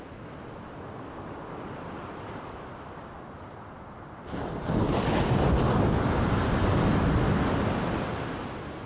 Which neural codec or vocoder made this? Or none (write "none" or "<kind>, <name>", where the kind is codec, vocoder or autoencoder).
none